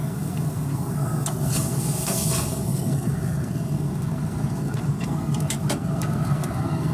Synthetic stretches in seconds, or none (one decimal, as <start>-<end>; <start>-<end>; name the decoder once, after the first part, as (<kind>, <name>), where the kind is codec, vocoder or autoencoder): 0.0-6.9 (codec, SNAC)